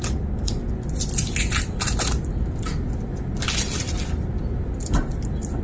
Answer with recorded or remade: recorded